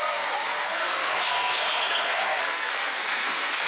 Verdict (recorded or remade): remade